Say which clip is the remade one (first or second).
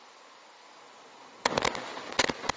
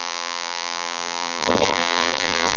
second